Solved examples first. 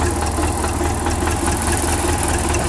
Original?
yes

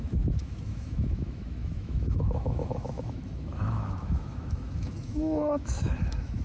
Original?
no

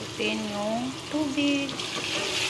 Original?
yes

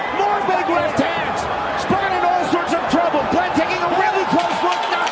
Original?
yes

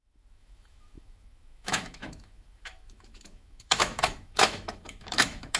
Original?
no